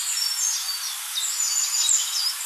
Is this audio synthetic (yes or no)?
no